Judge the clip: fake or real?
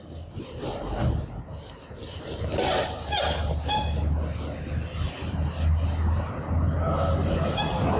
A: real